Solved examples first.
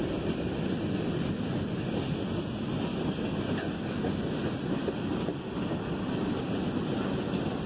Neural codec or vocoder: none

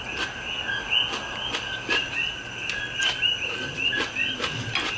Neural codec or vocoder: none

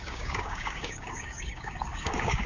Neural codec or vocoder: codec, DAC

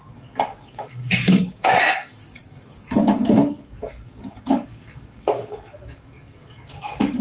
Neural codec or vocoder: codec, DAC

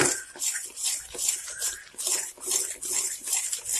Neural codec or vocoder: none